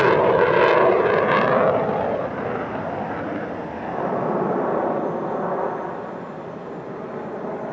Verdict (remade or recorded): recorded